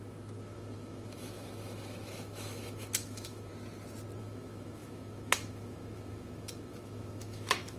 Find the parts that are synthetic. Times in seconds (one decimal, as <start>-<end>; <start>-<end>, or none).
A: 0.0-3.5; 4.2-7.8